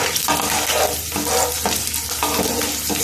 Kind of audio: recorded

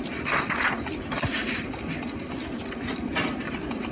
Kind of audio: recorded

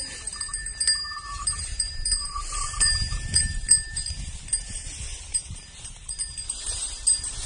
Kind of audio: remade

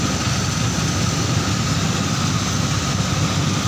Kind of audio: recorded